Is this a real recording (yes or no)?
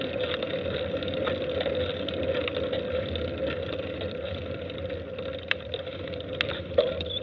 yes